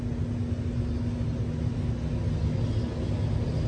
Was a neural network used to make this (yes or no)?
no